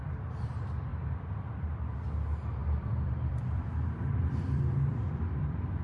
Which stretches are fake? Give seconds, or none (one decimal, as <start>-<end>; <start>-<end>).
0.9-1.7; 2.6-5.8